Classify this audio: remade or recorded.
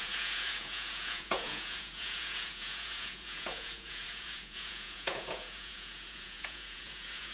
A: remade